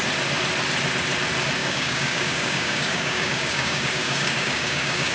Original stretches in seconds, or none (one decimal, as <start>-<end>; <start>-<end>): 0.0-1.6